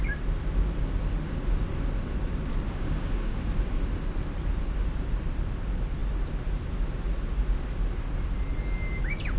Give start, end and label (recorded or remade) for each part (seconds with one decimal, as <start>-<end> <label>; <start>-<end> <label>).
0.0-2.5 recorded; 2.5-3.5 remade; 3.5-9.4 recorded